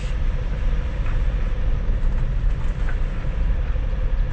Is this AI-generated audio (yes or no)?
no